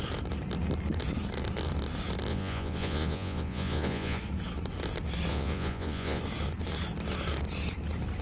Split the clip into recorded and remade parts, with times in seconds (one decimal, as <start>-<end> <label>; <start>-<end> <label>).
0.0-2.3 recorded; 2.3-4.2 remade; 4.2-5.3 recorded; 5.3-6.2 remade; 6.2-8.2 recorded